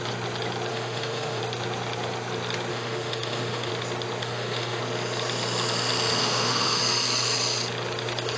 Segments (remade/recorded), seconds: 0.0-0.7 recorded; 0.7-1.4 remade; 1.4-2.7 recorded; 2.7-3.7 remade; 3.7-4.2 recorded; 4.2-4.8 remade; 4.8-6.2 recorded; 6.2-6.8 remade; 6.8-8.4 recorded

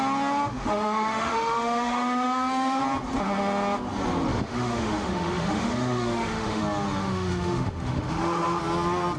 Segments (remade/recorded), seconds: 0.0-0.5 recorded; 0.5-2.8 remade; 2.8-4.3 recorded; 4.3-6.6 remade; 6.6-7.0 recorded; 7.0-8.6 remade; 8.6-9.2 recorded

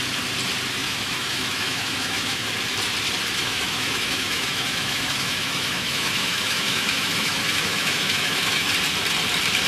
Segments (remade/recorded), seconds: 0.0-0.8 recorded; 0.8-2.5 remade; 2.5-3.4 recorded; 3.4-8.7 remade; 8.7-9.7 recorded